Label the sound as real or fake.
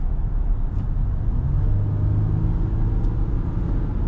real